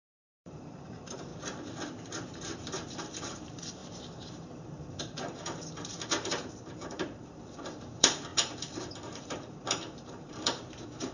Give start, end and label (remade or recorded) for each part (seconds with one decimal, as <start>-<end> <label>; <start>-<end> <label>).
0.0-1.3 remade; 1.3-3.0 recorded; 3.0-11.1 remade